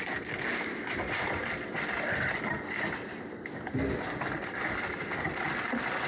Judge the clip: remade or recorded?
recorded